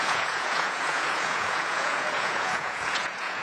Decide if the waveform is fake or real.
fake